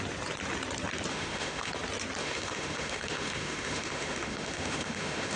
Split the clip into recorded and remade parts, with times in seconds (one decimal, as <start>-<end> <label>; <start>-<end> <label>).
0.0-1.1 recorded; 1.1-1.7 remade; 1.7-2.2 recorded; 2.2-5.4 remade